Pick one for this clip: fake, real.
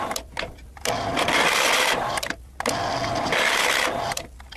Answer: real